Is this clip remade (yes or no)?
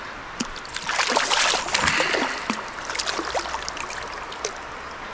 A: no